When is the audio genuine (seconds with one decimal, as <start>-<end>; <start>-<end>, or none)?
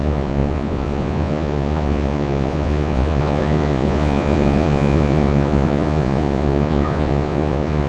none